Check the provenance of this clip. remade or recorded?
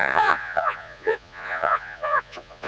remade